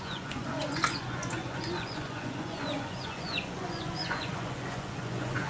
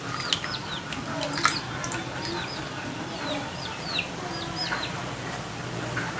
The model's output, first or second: first